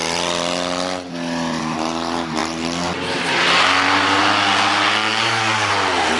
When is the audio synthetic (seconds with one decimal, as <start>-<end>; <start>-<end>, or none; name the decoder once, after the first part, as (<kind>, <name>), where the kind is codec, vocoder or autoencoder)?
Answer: 5.0-5.7 (codec, DAC)